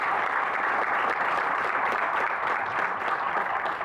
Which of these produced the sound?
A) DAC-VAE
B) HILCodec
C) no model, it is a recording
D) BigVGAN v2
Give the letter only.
C